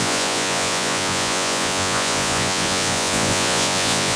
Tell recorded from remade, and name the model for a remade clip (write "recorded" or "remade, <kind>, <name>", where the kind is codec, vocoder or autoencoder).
remade, vocoder, Vocos